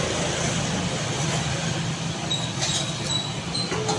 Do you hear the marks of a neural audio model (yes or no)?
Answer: no